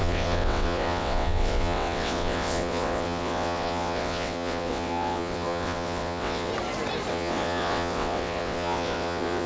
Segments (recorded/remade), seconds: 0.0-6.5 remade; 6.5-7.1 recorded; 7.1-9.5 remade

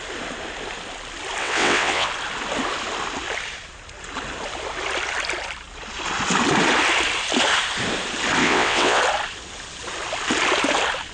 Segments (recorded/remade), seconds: 0.0-1.4 recorded; 1.4-2.1 remade; 2.1-8.4 recorded; 8.4-9.0 remade; 9.0-11.1 recorded

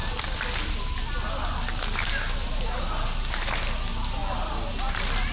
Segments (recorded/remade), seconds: 0.0-5.3 recorded

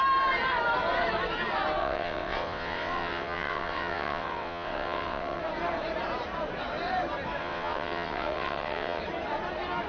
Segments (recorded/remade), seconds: 0.0-1.8 recorded; 1.8-5.4 remade; 5.4-7.4 recorded; 7.4-9.0 remade; 9.0-9.9 recorded

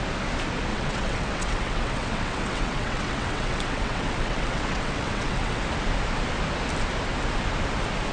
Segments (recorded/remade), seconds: 0.0-0.7 recorded; 0.7-5.6 remade; 5.6-8.1 recorded

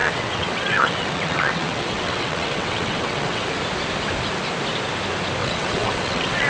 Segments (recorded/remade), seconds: 0.0-3.5 remade; 3.5-5.4 recorded; 5.4-6.5 remade

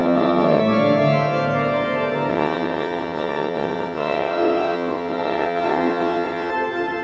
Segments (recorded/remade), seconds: 0.0-0.6 remade; 0.6-2.3 recorded; 2.3-6.5 remade; 6.5-7.0 recorded

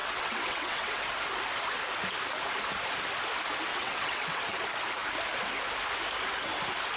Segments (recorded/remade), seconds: 0.0-1.0 remade; 1.0-3.7 recorded; 3.7-4.4 remade; 4.4-7.0 recorded